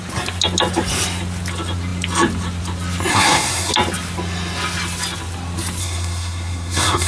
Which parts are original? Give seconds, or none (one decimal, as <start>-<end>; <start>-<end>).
0.0-3.1; 3.7-5.8